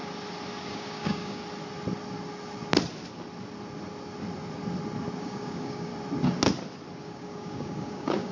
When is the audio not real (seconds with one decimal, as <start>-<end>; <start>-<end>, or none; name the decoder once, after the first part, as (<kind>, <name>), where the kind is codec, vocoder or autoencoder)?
0.7-1.4 (codec, DAC); 5.2-5.9; 7.0-8.3